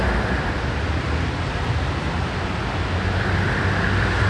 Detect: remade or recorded recorded